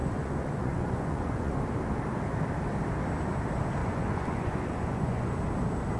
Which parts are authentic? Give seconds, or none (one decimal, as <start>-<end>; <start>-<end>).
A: 1.6-3.8; 5.3-6.0